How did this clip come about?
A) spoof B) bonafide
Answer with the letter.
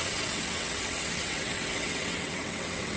A